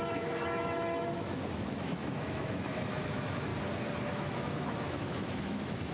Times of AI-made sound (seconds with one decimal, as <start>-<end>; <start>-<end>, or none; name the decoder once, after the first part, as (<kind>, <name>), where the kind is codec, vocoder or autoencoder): 0.0-3.5 (autoencoder, DAC-VAE); 4.1-5.9